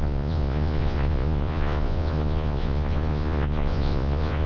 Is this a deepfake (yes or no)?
yes